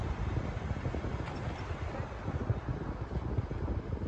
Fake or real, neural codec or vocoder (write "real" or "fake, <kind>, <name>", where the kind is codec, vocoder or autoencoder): real